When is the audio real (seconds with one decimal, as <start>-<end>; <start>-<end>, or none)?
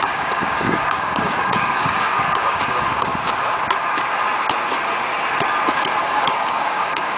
3.1-6.1